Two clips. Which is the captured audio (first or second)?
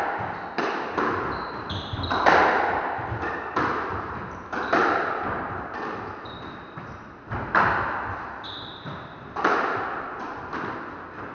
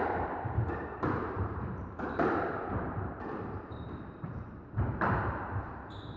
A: first